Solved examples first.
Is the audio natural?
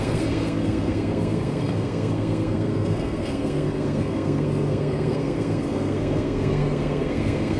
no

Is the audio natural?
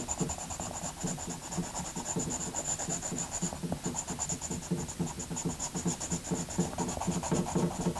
yes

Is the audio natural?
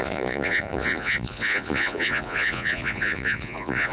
no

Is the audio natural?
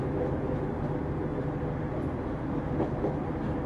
yes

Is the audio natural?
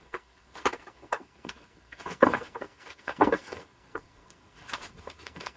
no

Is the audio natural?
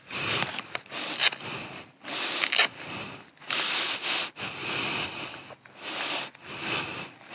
yes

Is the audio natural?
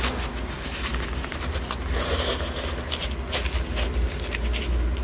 yes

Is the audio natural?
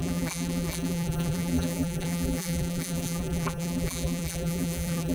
no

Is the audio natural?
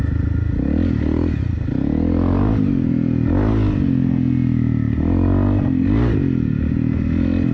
yes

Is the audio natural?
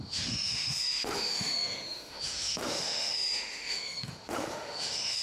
no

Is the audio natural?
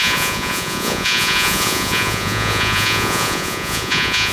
no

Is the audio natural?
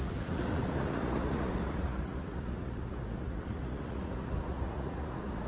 no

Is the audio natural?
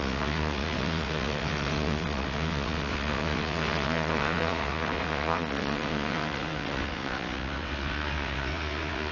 no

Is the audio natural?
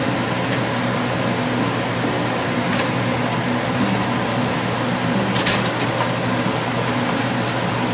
yes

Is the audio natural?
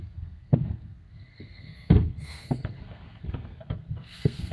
no